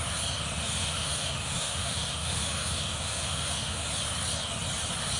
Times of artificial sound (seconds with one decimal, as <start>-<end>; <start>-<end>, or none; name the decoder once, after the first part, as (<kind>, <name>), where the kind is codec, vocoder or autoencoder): 0.8-3.9 (autoencoder, DAC-VAE)